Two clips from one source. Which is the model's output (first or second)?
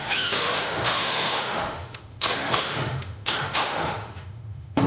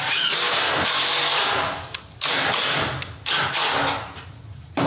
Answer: first